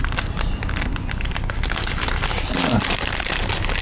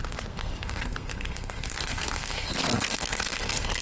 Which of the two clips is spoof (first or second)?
second